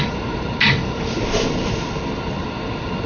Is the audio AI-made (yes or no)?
no